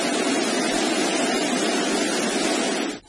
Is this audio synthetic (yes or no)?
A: no